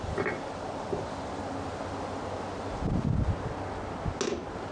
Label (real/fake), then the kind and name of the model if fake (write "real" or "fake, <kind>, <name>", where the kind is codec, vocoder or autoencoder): real